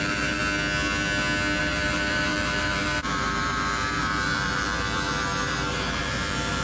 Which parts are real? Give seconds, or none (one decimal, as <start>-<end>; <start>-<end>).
0.4-1.6

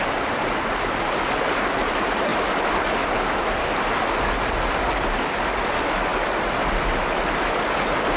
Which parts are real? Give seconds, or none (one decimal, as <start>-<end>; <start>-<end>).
0.0-8.2